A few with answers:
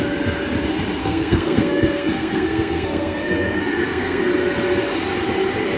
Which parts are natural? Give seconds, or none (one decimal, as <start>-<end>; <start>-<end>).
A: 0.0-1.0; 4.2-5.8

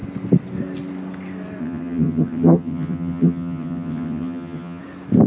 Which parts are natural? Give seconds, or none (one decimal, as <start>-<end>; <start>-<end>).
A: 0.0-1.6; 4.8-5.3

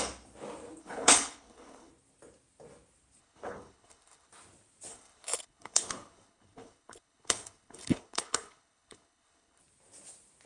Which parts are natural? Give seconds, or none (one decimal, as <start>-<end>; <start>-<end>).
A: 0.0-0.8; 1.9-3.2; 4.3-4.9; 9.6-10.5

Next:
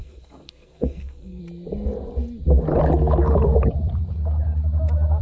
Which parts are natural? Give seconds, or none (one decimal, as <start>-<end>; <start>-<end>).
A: 1.4-5.2

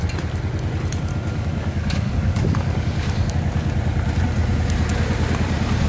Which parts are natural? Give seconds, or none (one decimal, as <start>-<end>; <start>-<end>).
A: 0.0-1.1; 3.3-5.9

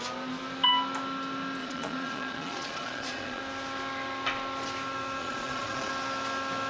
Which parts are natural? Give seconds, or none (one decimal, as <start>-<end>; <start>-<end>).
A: 0.0-1.6; 3.4-5.2; 5.9-6.7